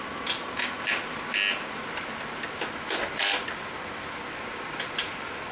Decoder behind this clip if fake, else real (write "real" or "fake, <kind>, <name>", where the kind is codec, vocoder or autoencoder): real